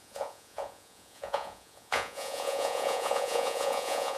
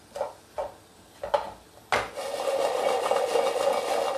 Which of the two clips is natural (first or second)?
second